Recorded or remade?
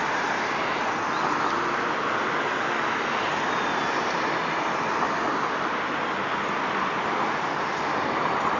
recorded